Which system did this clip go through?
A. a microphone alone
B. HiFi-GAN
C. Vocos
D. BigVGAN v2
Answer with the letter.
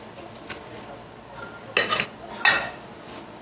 A